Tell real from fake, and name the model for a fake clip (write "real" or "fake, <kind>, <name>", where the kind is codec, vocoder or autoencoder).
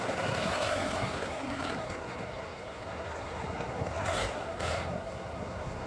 fake, codec, SNAC